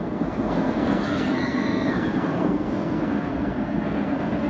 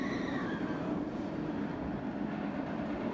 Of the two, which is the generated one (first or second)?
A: first